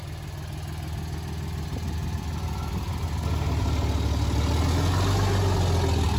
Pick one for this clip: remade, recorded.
recorded